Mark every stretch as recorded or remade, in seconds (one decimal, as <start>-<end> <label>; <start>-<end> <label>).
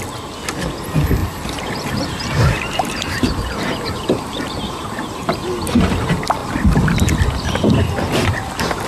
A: 0.0-1.2 recorded; 1.2-6.0 remade; 6.0-8.9 recorded